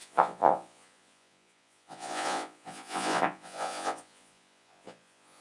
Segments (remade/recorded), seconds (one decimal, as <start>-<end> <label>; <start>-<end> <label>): 0.0-5.4 remade